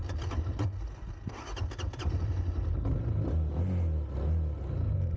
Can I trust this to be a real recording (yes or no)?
yes